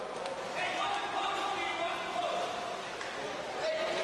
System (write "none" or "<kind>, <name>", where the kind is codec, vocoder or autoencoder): none